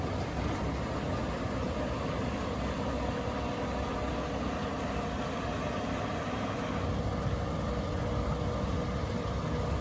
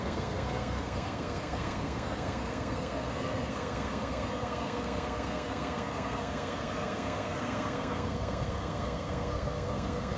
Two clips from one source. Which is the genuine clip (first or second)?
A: first